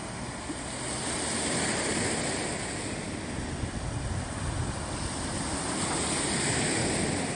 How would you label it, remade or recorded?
recorded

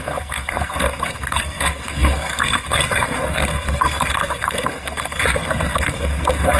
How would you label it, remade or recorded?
remade